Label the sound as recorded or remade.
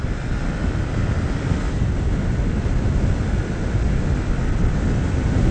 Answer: recorded